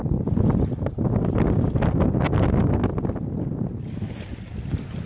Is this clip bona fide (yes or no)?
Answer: yes